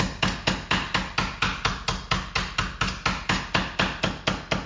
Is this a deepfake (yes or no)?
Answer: no